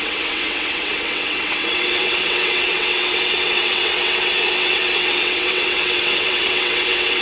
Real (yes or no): no